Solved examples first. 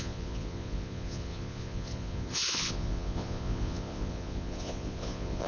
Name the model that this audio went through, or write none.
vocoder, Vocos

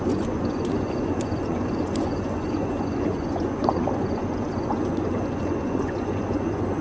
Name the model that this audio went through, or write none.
vocoder, Vocos